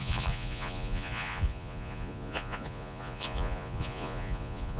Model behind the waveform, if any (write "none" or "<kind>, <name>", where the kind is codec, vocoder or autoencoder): vocoder, Vocos